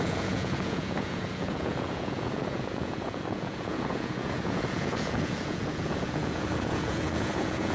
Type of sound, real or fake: fake